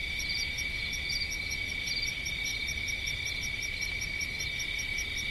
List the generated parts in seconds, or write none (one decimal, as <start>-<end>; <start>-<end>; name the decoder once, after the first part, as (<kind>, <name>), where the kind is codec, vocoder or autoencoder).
0.0-1.7 (vocoder, Vocos)